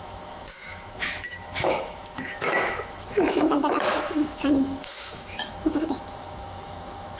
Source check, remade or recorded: remade